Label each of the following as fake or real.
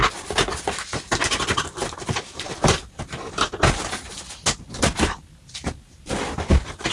real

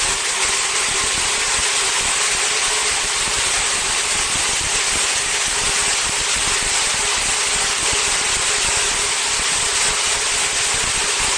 real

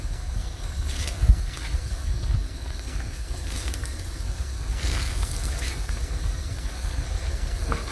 fake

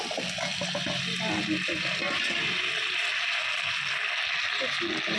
real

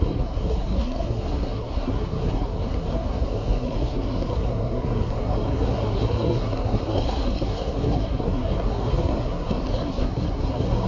fake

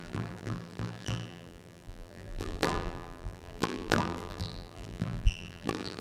fake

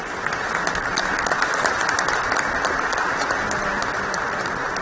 real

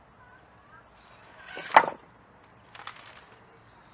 real